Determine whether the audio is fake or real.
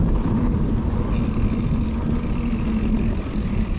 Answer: real